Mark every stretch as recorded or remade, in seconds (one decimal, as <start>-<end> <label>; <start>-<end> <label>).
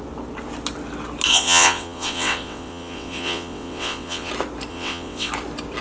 0.0-1.3 recorded; 1.3-4.3 remade; 4.3-4.7 recorded; 4.7-5.3 remade; 5.3-5.8 recorded